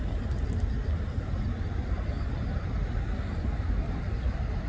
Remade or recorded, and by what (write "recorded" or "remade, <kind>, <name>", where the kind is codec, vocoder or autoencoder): recorded